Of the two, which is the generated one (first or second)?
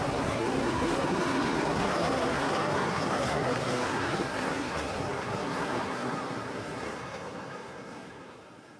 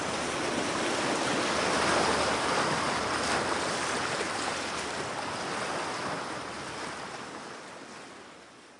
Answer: first